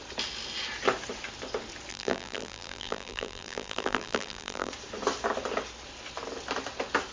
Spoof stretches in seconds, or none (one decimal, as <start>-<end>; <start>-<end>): 1.9-4.7